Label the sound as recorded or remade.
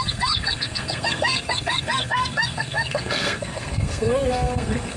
remade